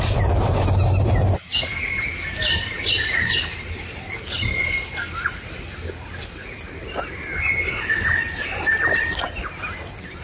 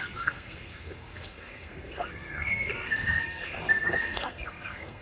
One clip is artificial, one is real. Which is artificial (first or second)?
second